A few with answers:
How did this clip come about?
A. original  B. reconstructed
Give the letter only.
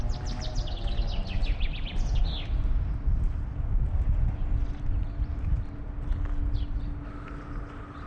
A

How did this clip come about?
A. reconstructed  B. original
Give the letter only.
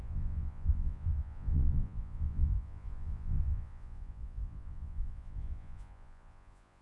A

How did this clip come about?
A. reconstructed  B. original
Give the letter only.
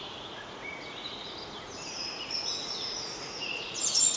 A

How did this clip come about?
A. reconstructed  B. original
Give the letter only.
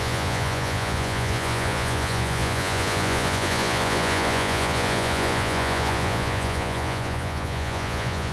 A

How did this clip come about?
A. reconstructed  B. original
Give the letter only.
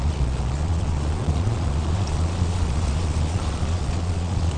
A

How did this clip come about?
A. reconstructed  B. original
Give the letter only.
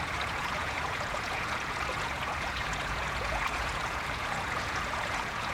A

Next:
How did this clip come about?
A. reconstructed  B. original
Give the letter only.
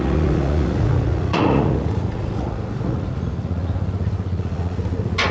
A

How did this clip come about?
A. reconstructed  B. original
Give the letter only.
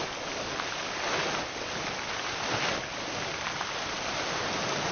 B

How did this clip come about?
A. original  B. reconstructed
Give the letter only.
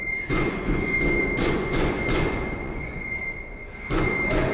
B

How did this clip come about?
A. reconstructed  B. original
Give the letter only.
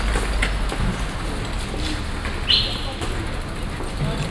B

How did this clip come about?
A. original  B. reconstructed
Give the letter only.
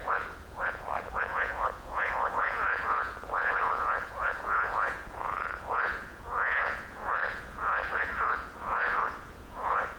B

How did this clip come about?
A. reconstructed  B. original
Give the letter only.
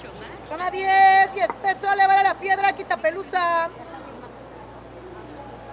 B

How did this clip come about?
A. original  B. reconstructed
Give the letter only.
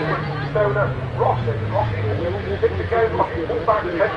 B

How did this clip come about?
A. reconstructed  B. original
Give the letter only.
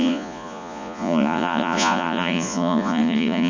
A